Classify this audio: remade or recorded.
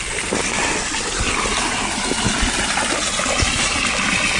recorded